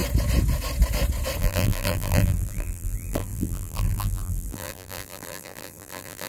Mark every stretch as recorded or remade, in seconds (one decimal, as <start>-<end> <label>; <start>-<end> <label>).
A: 0.0-1.4 recorded; 1.4-6.3 remade